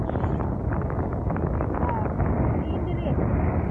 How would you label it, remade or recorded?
recorded